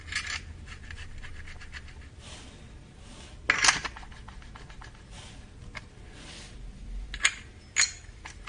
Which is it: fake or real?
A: real